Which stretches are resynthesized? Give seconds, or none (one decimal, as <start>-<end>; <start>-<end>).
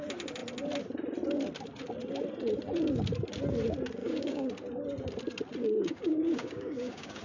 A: 4.0-4.5; 5.6-7.2